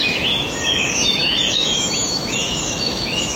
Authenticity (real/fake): fake